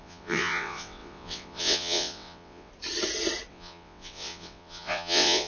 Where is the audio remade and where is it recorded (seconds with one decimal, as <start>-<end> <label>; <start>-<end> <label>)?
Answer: 0.0-2.7 remade; 2.7-3.5 recorded; 3.5-5.5 remade